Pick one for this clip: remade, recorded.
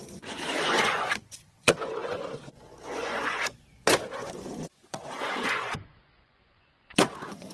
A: remade